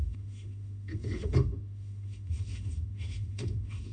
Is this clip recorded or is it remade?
remade